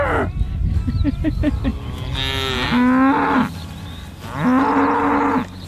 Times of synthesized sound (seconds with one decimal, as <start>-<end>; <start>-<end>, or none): none